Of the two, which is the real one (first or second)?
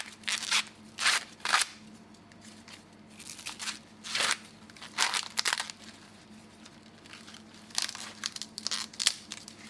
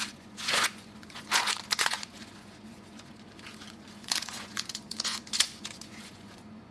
first